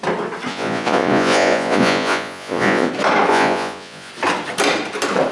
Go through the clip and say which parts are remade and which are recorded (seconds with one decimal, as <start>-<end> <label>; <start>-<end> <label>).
0.0-0.5 recorded; 0.5-2.9 remade; 2.9-3.3 recorded; 3.3-4.1 remade; 4.1-5.3 recorded